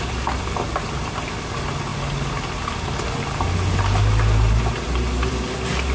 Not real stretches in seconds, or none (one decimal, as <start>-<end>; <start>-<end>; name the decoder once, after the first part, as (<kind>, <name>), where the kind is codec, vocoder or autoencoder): none